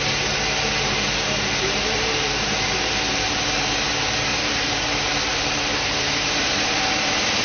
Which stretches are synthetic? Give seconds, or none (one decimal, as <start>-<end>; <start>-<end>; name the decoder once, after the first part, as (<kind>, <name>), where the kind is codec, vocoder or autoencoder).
0.0-7.4 (vocoder, BigVGAN v2)